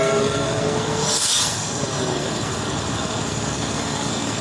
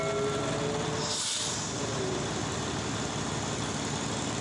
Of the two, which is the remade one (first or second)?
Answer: first